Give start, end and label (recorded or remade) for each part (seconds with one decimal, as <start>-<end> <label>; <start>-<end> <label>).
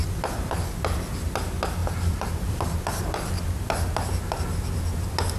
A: 0.0-0.6 remade; 0.6-1.8 recorded; 1.8-3.5 remade; 3.5-5.4 recorded